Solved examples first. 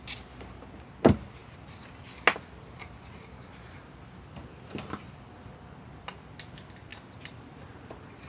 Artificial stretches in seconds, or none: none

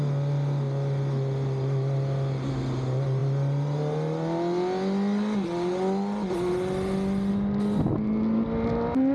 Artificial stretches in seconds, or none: none

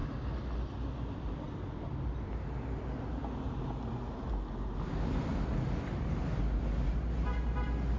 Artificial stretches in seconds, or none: none

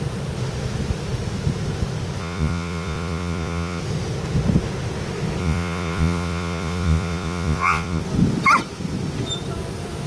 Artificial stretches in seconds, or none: 2.2-3.8; 5.4-8.0

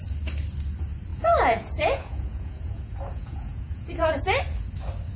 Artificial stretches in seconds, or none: 1.1-4.2

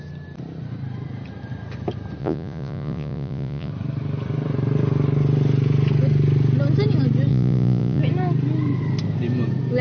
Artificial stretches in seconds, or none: 2.2-3.7; 7.3-8.0

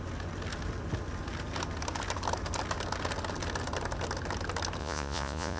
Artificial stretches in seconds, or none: 4.8-5.6

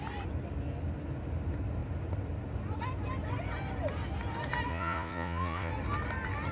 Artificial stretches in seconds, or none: 4.7-5.7